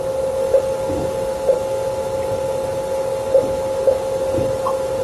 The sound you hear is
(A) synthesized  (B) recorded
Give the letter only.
B